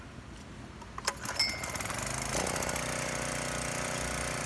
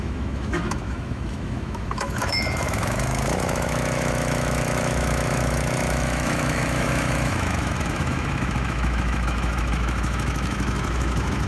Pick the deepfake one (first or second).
second